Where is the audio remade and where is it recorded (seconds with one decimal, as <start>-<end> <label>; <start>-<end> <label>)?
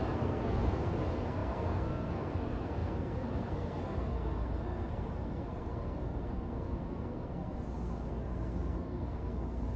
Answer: 0.0-9.8 remade